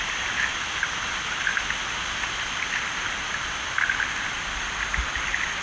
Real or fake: real